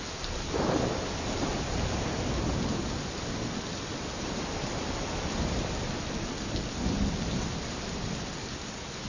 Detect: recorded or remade recorded